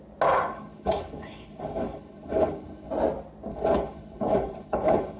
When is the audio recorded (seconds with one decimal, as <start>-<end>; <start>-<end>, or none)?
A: 0.0-0.5; 2.9-3.5